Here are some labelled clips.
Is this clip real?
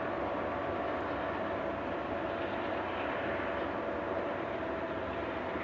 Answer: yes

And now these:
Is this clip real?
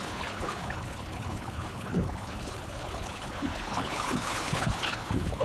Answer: no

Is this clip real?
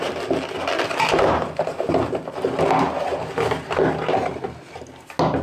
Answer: yes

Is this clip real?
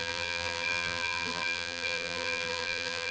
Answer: no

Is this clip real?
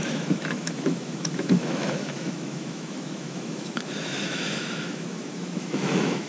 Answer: no